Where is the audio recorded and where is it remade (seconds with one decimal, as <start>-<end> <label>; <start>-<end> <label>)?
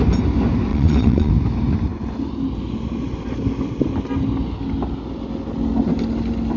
0.0-0.7 recorded; 0.7-1.3 remade; 1.3-6.6 recorded